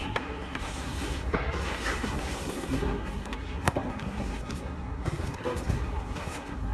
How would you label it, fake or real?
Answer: fake